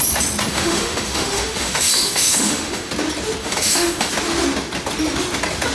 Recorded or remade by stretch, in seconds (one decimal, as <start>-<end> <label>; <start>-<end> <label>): 0.0-0.5 recorded; 0.5-2.9 remade; 2.9-3.4 recorded; 3.4-4.1 remade; 4.1-5.7 recorded